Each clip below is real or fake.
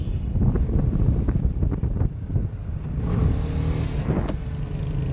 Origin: real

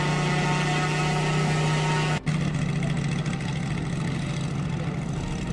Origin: real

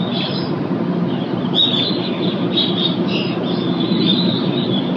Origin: real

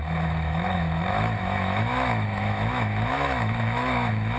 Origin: fake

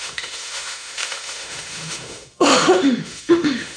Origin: fake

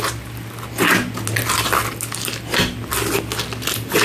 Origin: real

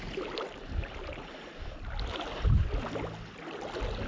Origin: real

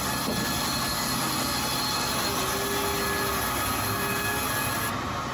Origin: real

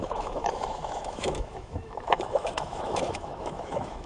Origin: fake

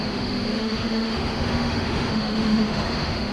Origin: fake